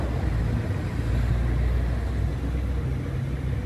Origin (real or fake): real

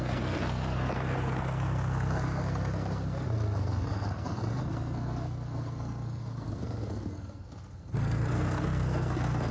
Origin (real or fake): fake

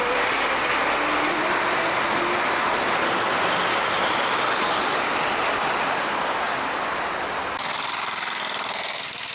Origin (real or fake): real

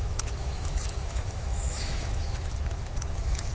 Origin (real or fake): fake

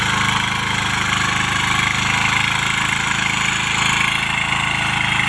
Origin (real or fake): real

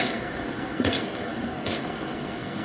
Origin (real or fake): fake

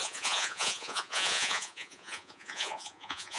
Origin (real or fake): fake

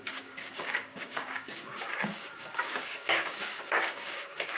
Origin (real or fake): fake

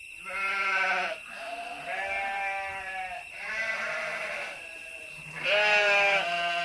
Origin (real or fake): fake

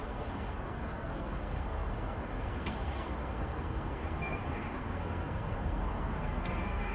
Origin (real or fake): fake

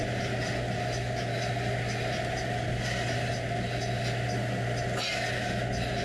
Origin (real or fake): real